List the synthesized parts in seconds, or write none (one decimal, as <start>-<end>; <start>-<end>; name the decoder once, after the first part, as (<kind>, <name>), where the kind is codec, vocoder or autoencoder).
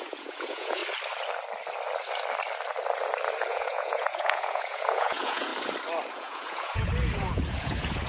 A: 0.0-0.8 (vocoder, Vocos); 3.5-5.5; 6.1-8.1